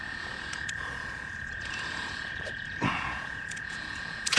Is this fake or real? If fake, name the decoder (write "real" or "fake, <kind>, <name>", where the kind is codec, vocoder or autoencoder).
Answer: fake, vocoder, Vocos